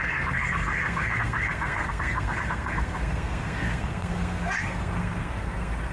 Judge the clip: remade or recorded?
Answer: remade